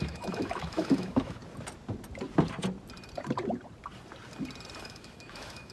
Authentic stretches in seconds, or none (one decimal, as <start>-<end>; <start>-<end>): 1.4-4.8